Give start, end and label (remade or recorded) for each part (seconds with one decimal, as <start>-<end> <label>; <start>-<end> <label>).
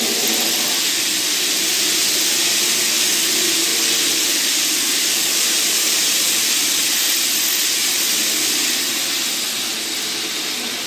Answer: 0.0-10.9 recorded